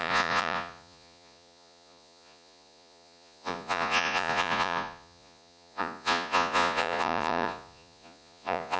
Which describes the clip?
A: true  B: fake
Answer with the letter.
B